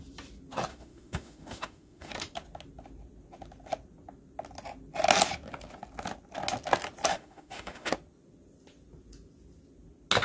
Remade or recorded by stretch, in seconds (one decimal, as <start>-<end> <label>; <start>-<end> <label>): 0.0-0.7 recorded; 0.7-2.1 remade; 2.1-7.1 recorded; 7.1-7.9 remade; 7.9-10.2 recorded

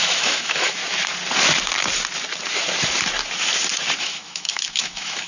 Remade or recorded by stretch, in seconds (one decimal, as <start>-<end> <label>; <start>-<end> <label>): 0.0-0.8 remade; 0.8-4.0 recorded; 4.0-5.3 remade

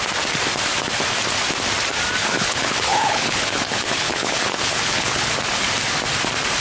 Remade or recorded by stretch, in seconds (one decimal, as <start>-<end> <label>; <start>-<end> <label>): 0.0-2.2 recorded; 2.2-5.3 remade; 5.3-6.6 recorded

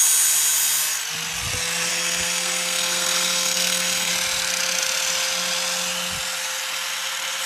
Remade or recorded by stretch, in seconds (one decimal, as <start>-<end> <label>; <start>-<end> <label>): 0.0-1.9 recorded; 1.9-4.1 remade; 4.1-7.5 recorded